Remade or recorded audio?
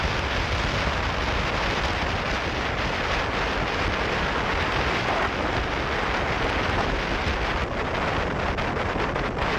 recorded